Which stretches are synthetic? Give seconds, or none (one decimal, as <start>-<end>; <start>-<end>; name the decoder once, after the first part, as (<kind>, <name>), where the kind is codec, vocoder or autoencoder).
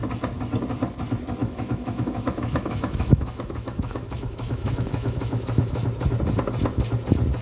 1.4-5.8 (autoencoder, DAC-VAE)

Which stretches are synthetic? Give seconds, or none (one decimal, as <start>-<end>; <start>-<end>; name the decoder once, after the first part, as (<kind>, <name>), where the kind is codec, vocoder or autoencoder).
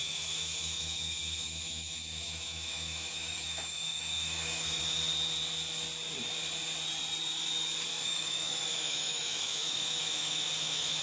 0.0-4.8 (autoencoder, DAC-VAE); 7.9-11.0